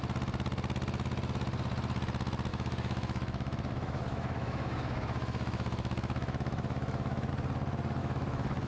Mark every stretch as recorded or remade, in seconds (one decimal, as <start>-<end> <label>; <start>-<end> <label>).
0.0-2.5 recorded; 2.5-7.3 remade; 7.3-8.0 recorded; 8.0-8.7 remade

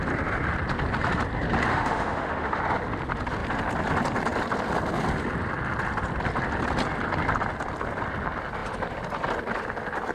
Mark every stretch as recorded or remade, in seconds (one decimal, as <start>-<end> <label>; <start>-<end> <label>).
0.0-1.7 recorded; 1.7-2.6 remade; 2.6-10.1 recorded

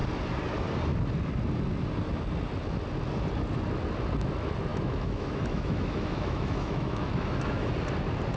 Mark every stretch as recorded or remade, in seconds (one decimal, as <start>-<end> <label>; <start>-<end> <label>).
0.0-4.7 recorded; 4.7-7.7 remade; 7.7-8.4 recorded

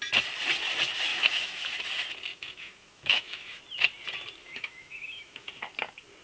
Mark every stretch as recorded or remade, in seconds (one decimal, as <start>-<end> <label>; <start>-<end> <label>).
0.0-1.1 recorded; 1.1-1.7 remade; 1.7-2.3 recorded; 2.3-3.6 remade; 3.6-4.4 recorded; 4.4-5.5 remade; 5.5-6.2 recorded